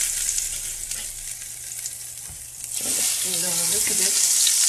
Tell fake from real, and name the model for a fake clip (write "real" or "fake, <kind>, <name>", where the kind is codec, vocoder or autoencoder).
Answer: real